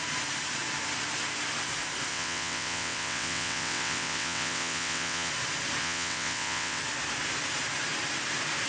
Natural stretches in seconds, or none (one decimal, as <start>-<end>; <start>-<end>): 0.0-2.1; 5.3-5.8; 6.8-8.7